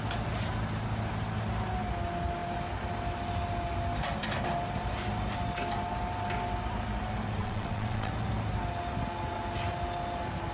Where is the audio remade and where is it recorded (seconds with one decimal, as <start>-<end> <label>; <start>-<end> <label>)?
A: 0.0-7.4 recorded; 7.4-8.1 remade; 8.1-10.5 recorded